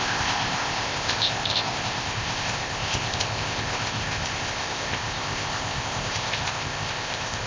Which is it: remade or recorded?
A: remade